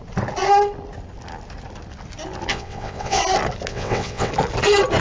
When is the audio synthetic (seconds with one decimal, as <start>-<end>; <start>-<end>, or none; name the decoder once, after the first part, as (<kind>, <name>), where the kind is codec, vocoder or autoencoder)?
2.5-3.2 (vocoder, WaveNeXt); 3.7-4.3